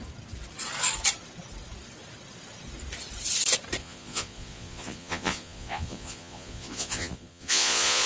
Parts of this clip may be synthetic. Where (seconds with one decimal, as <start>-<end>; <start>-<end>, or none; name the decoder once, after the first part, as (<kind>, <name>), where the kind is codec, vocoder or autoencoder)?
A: 3.8-8.1 (vocoder, Vocos)